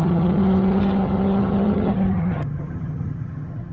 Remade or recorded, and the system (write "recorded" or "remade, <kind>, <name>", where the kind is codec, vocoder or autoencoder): remade, vocoder, HiFi-GAN